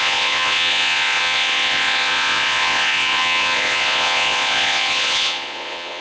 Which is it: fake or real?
fake